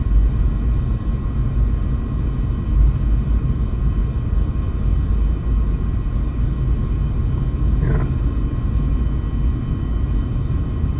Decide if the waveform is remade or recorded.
recorded